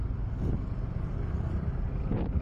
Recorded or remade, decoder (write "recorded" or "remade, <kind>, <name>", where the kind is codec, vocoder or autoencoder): recorded